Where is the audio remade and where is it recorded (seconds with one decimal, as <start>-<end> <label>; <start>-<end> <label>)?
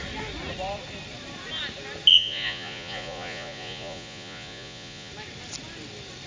0.0-2.1 recorded; 2.1-5.1 remade; 5.1-6.3 recorded